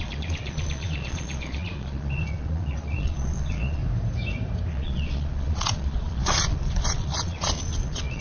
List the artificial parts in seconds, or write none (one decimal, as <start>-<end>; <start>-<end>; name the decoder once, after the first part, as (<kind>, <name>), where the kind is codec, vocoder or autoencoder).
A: 0.0-3.8 (vocoder, Vocos); 4.7-8.2